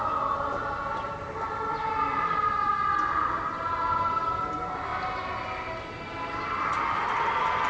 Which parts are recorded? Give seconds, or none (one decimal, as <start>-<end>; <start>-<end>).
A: 0.0-7.7